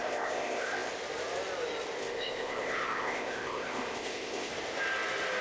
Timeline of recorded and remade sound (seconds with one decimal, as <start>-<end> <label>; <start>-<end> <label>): 0.0-0.9 remade; 0.9-2.0 recorded; 2.0-4.5 remade; 4.5-5.4 recorded